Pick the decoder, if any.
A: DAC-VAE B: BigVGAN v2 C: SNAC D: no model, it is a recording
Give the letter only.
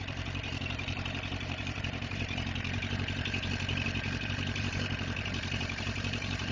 B